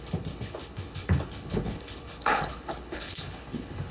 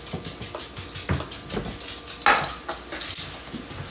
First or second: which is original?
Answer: second